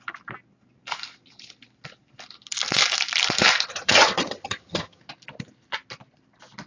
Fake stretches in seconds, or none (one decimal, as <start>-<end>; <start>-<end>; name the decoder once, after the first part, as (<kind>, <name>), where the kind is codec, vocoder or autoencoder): 3.7-5.0 (vocoder, HiFi-GAN)